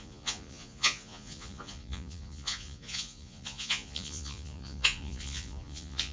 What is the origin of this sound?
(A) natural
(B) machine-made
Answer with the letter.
B